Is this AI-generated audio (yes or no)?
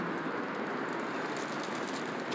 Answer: no